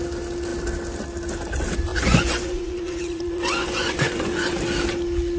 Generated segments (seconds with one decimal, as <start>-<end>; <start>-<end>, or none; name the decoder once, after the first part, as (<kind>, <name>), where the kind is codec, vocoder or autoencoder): 1.9-4.5 (vocoder, Vocos)